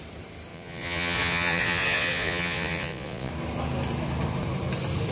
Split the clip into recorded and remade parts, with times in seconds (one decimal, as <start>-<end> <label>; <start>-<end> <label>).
0.0-0.5 recorded; 0.5-3.3 remade; 3.3-5.1 recorded